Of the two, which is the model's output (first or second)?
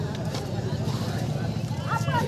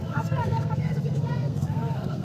second